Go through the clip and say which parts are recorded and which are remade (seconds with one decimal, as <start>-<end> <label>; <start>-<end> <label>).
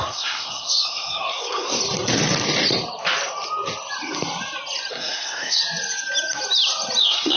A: 0.0-1.8 remade; 1.8-4.9 recorded; 4.9-5.6 remade; 5.6-7.0 recorded; 7.0-7.4 remade